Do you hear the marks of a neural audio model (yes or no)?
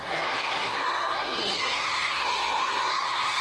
yes